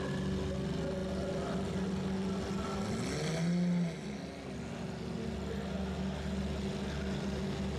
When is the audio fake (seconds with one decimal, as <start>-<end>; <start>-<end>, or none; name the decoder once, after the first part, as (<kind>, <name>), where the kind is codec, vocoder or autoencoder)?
none